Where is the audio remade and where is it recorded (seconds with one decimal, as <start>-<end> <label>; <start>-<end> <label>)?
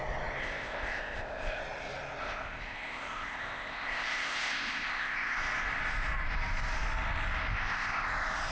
0.0-0.4 recorded; 0.4-1.6 remade; 1.6-2.2 recorded; 2.2-5.4 remade; 5.4-7.5 recorded; 7.5-8.1 remade; 8.1-8.5 recorded